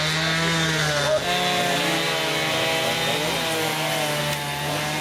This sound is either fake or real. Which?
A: real